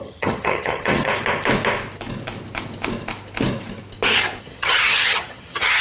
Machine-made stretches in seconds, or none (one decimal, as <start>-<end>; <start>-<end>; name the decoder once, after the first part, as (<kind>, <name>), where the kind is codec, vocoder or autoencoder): 0.0-1.1 (vocoder, HiFi-GAN); 4.4-5.8